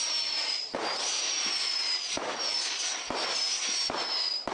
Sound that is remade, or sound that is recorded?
recorded